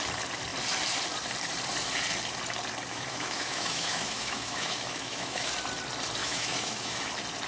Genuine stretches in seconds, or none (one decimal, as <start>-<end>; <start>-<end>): 0.0-2.9; 5.5-6.2; 7.1-7.5